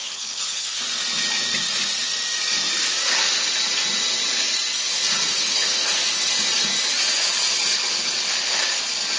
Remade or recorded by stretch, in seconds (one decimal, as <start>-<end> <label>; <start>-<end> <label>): 0.0-0.8 remade; 0.8-5.3 recorded; 5.3-5.9 remade; 5.9-9.2 recorded